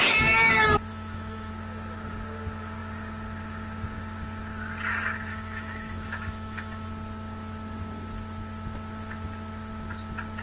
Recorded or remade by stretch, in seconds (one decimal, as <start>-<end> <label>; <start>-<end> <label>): 0.0-0.9 recorded; 0.9-1.5 remade; 1.5-5.3 recorded; 5.3-6.9 remade; 6.9-10.4 recorded